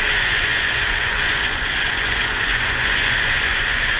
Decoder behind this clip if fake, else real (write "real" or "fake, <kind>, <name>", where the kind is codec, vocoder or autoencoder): fake, vocoder, Vocos